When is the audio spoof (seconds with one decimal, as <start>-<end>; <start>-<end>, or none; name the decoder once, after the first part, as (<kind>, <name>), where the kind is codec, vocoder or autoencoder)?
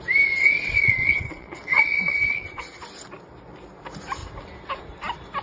0.4-2.8 (vocoder, WaveNeXt)